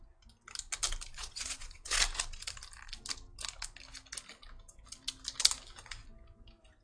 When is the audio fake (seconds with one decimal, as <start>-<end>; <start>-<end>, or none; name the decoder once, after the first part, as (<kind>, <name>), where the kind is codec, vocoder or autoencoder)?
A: 1.1-2.0 (vocoder, Vocos)